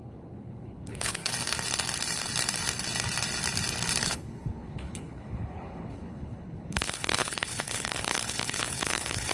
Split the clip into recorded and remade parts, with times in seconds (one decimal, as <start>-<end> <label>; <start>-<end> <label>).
0.0-1.2 remade; 1.2-4.0 recorded; 4.0-9.3 remade